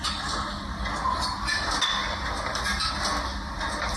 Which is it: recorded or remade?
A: recorded